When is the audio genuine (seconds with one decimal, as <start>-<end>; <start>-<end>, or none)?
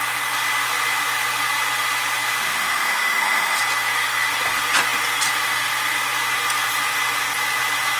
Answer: 0.0-2.4; 3.6-8.0